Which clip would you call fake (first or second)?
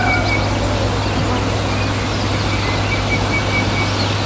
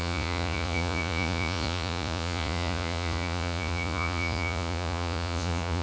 second